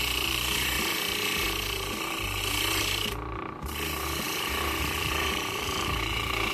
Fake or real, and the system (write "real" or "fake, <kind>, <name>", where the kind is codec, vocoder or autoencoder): fake, vocoder, BigVGAN v2